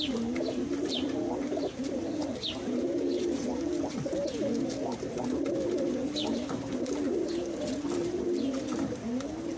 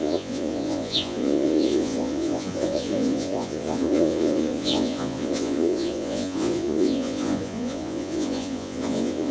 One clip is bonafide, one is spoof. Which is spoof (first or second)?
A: second